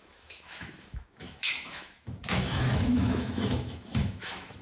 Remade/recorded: remade